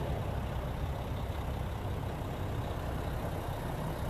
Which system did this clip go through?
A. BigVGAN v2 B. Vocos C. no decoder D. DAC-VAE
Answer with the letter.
C